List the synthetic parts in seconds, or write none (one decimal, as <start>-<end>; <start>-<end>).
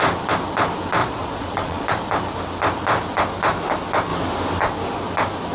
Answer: 1.0-1.9